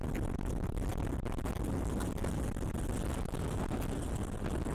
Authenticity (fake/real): real